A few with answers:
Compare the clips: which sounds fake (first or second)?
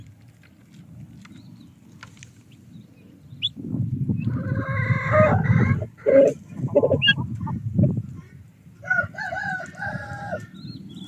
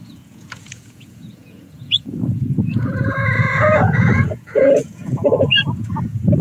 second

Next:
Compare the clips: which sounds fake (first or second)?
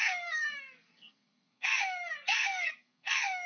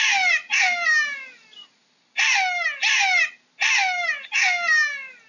first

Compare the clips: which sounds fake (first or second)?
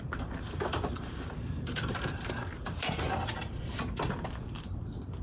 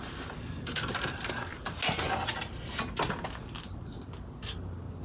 first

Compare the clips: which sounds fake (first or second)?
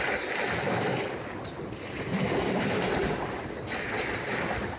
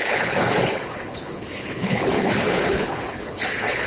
second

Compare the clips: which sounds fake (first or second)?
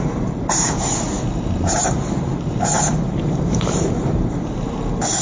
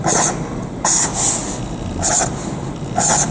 first